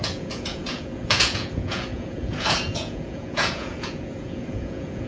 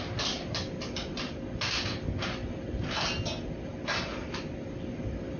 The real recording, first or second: second